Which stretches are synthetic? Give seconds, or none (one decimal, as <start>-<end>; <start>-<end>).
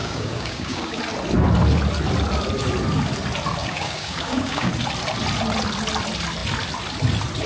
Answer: 0.0-1.0; 3.6-4.7